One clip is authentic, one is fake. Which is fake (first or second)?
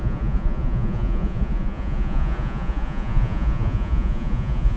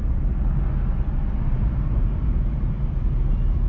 first